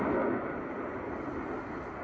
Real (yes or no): yes